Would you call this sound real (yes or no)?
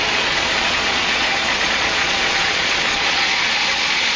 no